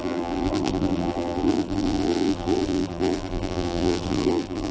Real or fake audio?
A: fake